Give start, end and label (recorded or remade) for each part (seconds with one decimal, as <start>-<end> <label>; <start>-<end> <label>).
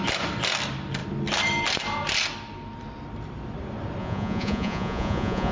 0.0-4.0 recorded; 4.0-5.5 remade